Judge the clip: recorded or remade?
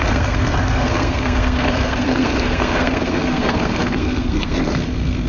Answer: remade